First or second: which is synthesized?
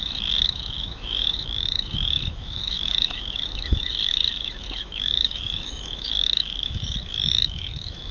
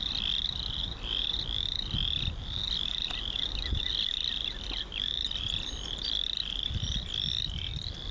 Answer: first